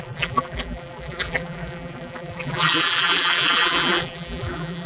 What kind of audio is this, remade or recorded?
remade